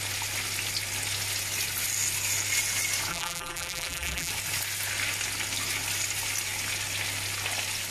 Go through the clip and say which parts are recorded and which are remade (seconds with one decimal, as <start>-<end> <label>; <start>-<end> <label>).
0.0-3.1 recorded; 3.1-4.3 remade; 4.3-7.9 recorded